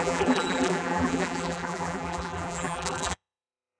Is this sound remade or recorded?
remade